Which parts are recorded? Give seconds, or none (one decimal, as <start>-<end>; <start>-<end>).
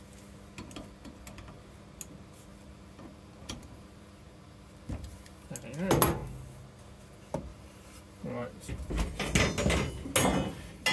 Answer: 0.0-2.5; 5.5-7.5; 8.9-10.9